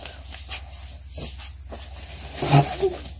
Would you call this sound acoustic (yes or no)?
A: yes